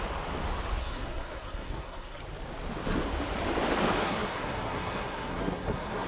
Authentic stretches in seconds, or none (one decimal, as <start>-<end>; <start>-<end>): 0.0-0.8; 2.2-4.0